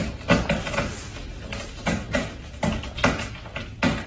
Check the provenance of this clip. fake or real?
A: real